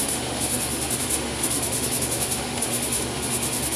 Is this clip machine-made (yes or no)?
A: yes